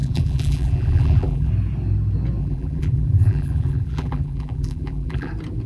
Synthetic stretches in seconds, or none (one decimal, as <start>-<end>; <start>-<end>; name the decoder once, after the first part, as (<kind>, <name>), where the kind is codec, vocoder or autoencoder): 0.0-1.5 (vocoder, BigVGAN v2); 2.4-5.3